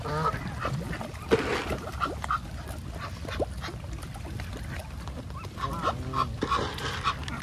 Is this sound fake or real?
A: real